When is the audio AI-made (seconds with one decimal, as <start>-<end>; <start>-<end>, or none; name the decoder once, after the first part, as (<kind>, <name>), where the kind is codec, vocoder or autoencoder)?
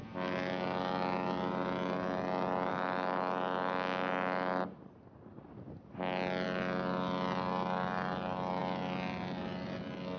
none